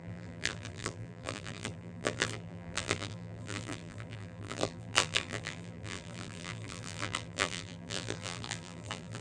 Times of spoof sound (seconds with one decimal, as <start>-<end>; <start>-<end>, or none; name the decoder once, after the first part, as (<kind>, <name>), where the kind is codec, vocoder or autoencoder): 0.0-9.2 (vocoder, BigVGAN v2)